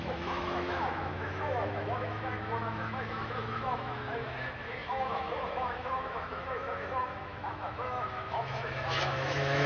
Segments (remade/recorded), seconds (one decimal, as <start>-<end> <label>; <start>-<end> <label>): 0.0-9.7 remade